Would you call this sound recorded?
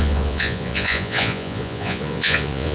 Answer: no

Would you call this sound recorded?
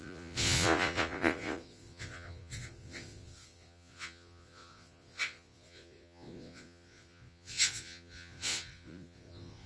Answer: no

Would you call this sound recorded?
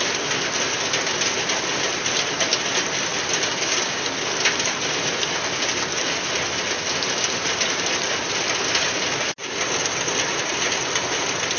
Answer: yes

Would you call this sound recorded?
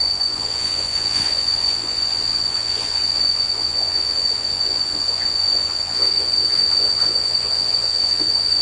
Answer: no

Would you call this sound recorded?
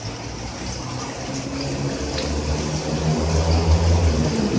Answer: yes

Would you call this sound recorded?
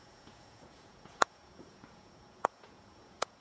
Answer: no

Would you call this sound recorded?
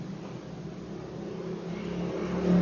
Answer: yes